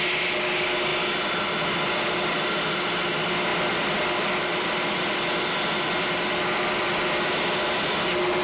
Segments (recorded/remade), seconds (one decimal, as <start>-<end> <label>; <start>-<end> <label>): 0.0-8.4 recorded